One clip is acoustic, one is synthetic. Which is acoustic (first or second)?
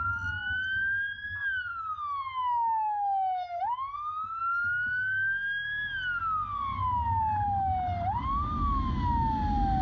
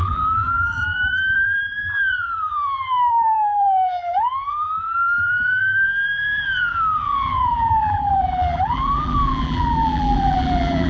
first